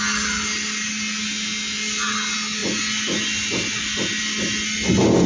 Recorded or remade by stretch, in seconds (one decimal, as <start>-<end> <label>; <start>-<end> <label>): 0.0-5.3 recorded